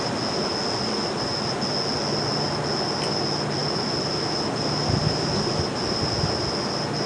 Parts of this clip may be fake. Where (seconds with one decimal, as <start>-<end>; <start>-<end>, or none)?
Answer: none